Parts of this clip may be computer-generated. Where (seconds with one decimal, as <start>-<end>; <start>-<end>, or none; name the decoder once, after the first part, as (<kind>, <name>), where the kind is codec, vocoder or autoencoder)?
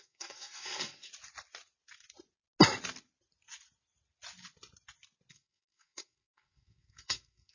0.0-1.1 (codec, SNAC); 5.3-7.5